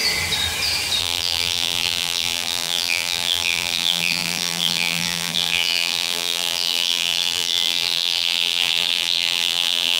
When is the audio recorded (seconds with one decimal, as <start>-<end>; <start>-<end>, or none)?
0.0-1.0